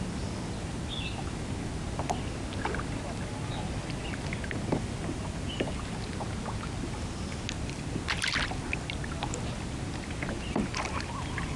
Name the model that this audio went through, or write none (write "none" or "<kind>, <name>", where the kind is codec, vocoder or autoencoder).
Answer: none